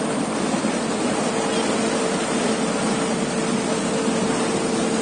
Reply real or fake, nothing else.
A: real